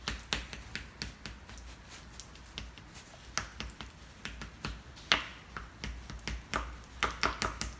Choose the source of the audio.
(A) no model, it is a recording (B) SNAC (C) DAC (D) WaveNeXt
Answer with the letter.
A